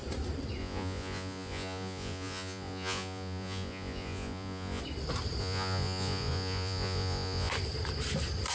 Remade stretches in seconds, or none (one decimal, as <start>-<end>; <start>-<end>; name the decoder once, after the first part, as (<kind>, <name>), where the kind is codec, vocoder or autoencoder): 0.6-4.8 (vocoder, Vocos); 5.4-7.5